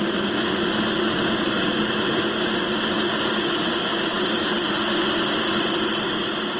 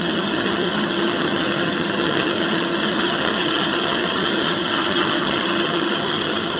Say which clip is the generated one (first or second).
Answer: second